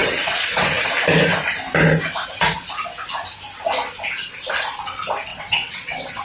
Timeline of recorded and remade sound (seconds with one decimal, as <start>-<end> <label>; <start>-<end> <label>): 0.0-0.8 remade; 0.8-5.3 recorded; 5.3-6.2 remade